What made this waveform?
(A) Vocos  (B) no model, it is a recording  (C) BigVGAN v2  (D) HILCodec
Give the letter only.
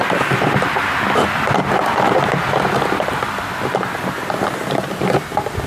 B